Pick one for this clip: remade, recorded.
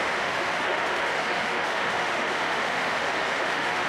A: remade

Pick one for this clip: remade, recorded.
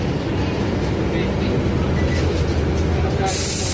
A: recorded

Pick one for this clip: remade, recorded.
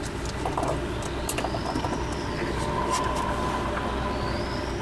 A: recorded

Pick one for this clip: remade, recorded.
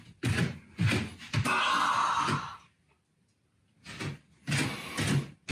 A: recorded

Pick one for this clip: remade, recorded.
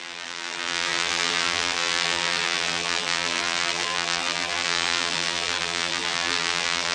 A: remade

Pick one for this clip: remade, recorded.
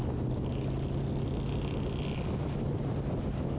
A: recorded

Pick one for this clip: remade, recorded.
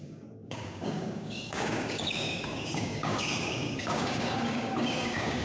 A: remade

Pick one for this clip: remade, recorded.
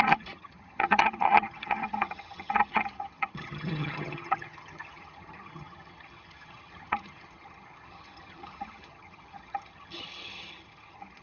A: remade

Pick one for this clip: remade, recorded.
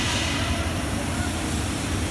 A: recorded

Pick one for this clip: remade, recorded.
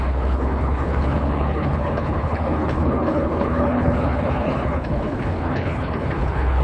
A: remade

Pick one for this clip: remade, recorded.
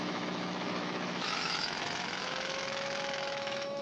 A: remade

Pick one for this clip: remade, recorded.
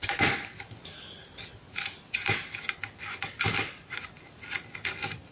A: recorded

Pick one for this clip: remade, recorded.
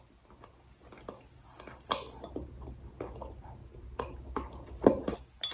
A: recorded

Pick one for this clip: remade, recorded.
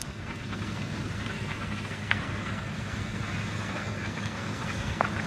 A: remade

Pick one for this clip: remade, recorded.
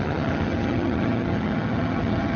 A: remade